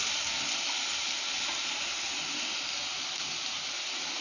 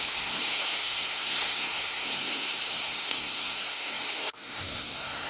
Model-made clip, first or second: second